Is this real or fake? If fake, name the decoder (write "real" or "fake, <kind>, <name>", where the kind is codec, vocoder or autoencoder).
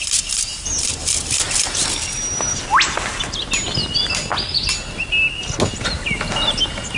real